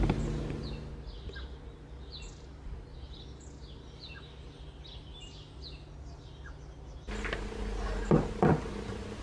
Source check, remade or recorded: recorded